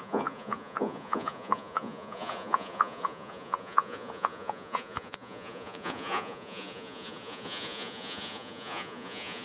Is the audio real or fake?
fake